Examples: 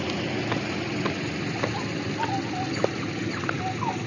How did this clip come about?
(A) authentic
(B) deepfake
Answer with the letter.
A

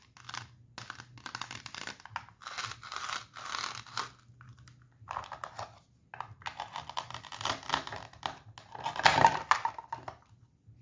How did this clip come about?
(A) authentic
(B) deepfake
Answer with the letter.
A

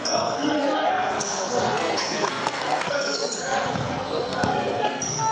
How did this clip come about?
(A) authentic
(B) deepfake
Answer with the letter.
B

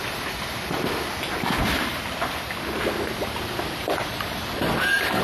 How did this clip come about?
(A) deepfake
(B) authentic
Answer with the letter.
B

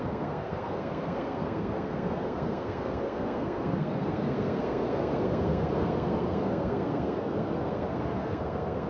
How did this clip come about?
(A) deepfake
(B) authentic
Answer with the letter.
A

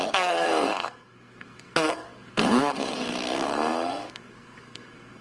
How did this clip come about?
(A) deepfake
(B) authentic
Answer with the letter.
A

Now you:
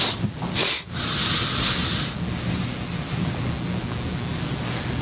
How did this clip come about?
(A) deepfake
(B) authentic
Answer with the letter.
B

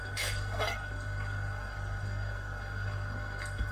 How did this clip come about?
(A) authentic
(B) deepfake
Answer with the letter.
B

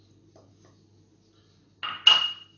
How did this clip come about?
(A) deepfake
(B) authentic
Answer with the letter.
B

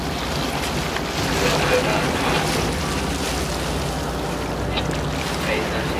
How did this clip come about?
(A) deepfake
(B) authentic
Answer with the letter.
B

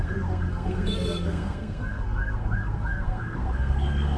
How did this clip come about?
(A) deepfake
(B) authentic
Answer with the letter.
A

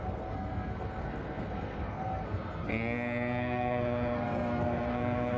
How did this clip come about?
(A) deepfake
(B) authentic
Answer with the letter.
A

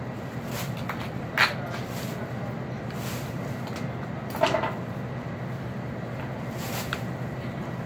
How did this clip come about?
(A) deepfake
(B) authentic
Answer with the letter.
B